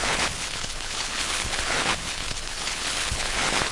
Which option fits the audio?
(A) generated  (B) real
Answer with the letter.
A